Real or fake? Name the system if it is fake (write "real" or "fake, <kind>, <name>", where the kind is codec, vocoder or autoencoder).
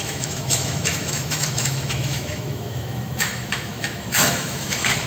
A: fake, autoencoder, DAC-VAE